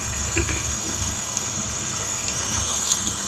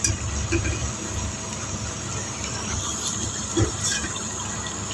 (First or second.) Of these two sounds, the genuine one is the second